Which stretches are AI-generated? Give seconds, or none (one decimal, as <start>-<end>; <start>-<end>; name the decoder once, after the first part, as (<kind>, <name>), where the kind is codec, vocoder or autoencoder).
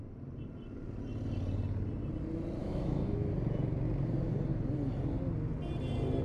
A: 2.6-3.3 (autoencoder, DAC-VAE)